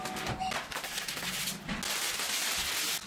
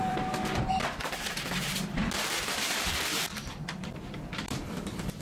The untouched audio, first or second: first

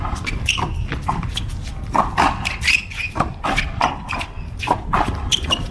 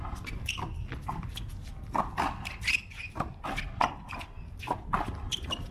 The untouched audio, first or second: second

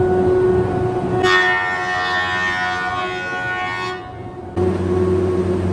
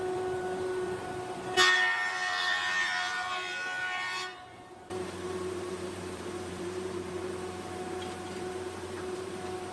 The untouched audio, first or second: first